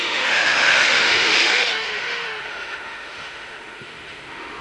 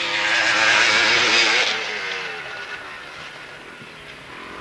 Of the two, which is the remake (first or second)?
first